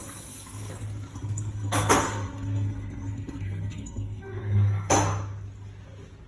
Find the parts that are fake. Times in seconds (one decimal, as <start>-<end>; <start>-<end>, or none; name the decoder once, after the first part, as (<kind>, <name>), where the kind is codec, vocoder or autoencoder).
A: 0.0-0.7 (codec, SNAC); 1.1-4.9